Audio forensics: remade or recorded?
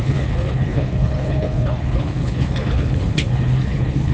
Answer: remade